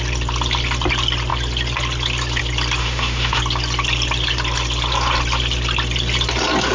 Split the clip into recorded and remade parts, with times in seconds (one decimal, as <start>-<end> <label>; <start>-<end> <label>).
0.0-2.8 recorded; 2.8-3.4 remade; 3.4-6.7 recorded